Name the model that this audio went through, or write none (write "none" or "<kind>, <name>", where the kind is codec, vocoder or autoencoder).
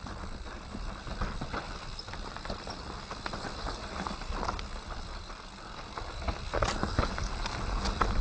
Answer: none